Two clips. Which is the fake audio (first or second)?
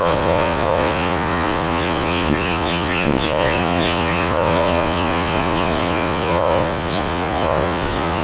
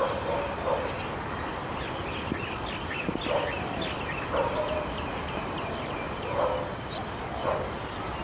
first